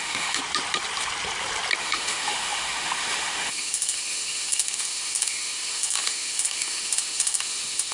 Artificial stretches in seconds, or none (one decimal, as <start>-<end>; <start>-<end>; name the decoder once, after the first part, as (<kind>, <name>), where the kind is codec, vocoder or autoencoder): 0.0-0.4 (autoencoder, DAC-VAE); 1.8-7.9